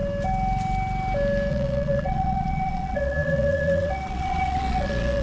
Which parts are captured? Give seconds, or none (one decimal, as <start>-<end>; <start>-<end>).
0.0-1.5